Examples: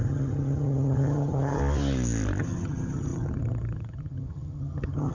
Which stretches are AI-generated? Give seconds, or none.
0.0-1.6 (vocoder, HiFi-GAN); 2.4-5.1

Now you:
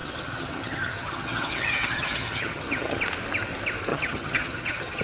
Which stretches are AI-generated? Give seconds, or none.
0.0-3.0 (vocoder, HiFi-GAN); 3.9-5.0

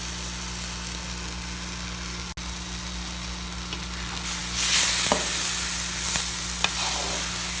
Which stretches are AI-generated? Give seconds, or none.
none

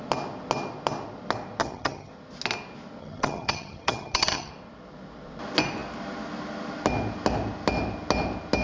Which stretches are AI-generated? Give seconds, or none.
1.6-2.1 (vocoder, HiFi-GAN); 3.0-4.5